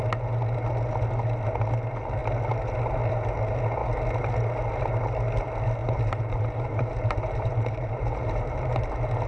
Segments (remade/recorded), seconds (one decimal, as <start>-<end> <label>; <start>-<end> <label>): 0.0-5.8 recorded; 5.8-8.9 remade; 8.9-9.3 recorded